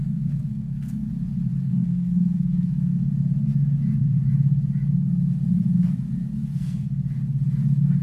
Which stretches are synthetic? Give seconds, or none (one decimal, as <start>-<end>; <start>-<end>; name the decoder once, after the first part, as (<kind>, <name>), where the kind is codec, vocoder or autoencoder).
0.0-1.1 (codec, SNAC); 1.6-3.1; 6.4-7.0